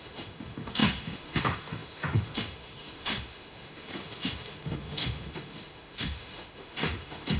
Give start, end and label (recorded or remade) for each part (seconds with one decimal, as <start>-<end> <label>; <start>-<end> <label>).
0.0-7.4 remade